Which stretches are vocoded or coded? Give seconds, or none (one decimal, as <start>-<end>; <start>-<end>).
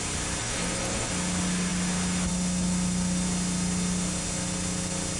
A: 0.4-1.1